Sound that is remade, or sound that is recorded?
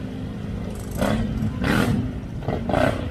recorded